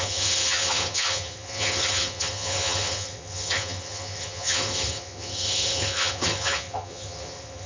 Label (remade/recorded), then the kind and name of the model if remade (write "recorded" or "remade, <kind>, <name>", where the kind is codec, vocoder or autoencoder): remade, vocoder, HiFi-GAN